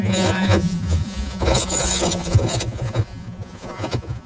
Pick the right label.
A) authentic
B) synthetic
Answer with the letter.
B